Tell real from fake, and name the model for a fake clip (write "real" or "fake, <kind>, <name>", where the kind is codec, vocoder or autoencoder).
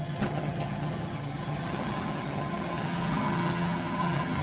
fake, vocoder, HiFi-GAN